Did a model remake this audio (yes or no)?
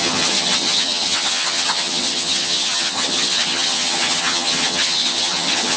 yes